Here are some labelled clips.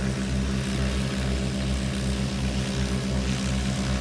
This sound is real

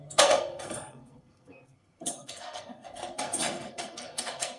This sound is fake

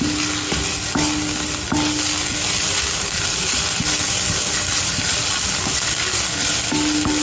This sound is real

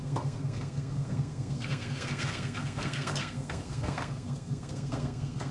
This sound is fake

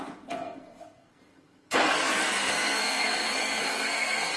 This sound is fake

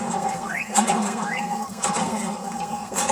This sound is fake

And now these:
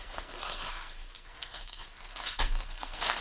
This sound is fake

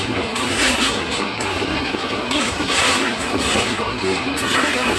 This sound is fake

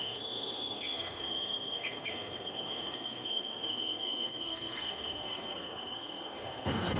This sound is fake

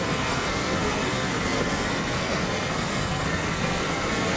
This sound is fake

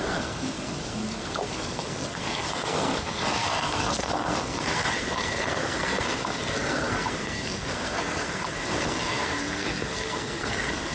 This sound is fake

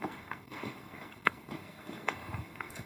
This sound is fake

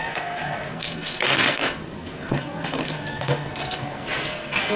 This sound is fake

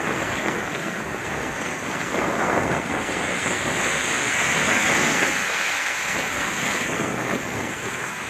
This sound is fake